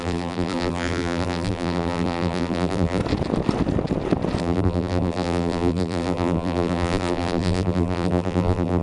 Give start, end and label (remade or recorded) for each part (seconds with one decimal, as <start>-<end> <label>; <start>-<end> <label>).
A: 0.0-3.0 remade; 3.0-4.4 recorded; 4.4-8.8 remade